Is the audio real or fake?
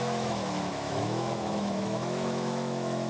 fake